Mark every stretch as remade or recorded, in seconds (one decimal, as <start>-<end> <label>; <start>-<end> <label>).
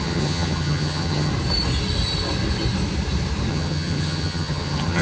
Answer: 0.0-1.3 remade; 1.3-3.5 recorded; 3.5-5.0 remade